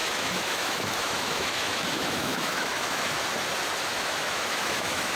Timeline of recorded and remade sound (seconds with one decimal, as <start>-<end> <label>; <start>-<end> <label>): 0.0-3.1 remade; 3.1-3.9 recorded; 3.9-5.2 remade